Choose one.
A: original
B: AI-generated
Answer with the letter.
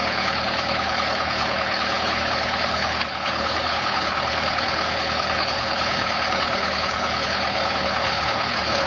B